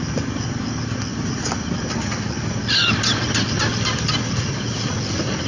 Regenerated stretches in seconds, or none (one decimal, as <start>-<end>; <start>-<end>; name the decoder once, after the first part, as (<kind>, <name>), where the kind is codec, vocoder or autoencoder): none